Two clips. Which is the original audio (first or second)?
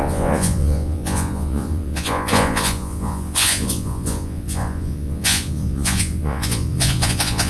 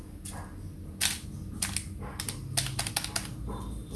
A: second